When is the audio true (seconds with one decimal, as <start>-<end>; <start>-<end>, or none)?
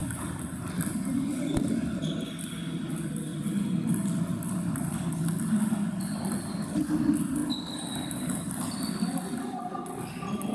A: 0.0-10.5